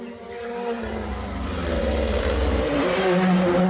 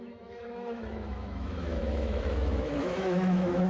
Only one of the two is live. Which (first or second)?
first